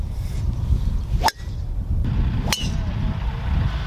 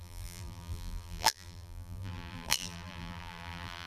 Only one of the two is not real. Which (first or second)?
second